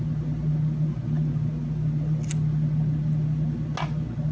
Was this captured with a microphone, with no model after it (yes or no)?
yes